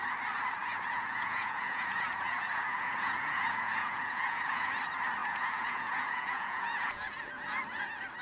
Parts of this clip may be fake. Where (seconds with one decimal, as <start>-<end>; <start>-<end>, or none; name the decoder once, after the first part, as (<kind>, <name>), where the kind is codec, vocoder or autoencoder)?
0.6-4.7 (vocoder, Vocos); 5.2-7.6

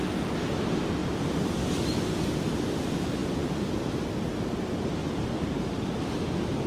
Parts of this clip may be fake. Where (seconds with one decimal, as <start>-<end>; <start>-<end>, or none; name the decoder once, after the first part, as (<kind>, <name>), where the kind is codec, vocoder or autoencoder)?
1.0-2.2 (vocoder, BigVGAN v2); 5.0-5.9

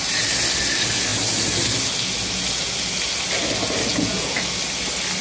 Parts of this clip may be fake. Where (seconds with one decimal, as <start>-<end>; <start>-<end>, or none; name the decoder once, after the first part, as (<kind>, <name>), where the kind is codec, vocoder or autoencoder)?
3.9-4.4 (vocoder, Vocos)

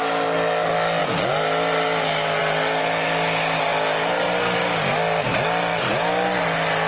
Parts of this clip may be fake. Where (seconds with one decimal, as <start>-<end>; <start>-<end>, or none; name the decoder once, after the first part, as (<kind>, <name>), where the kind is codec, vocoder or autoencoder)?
none

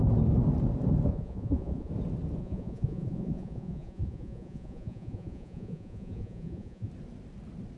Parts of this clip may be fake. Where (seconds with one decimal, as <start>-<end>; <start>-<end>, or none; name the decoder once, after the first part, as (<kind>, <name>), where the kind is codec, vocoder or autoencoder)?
1.1-1.9 (vocoder, Vocos); 2.4-6.9

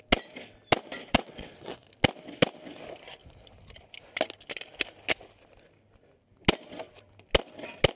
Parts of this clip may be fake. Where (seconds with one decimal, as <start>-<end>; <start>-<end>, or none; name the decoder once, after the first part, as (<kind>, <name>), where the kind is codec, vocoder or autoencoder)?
1.1-1.9 (vocoder, WaveNeXt)

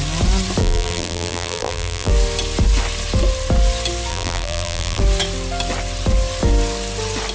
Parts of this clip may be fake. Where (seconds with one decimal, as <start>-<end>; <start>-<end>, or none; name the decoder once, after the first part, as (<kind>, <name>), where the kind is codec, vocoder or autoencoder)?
0.6-2.1 (vocoder, BigVGAN v2); 4.1-5.0